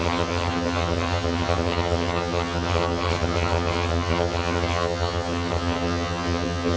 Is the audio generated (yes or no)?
yes